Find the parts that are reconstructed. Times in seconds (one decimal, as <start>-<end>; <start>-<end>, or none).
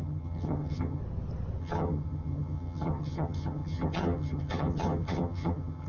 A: 0.0-1.0; 1.6-5.9